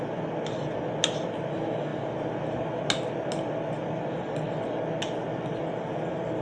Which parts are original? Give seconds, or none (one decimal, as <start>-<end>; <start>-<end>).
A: 0.0-6.4